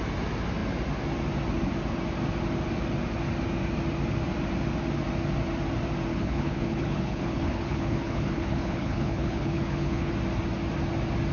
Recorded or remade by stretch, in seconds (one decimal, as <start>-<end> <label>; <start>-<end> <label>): 0.0-6.1 recorded; 6.1-10.1 remade; 10.1-11.3 recorded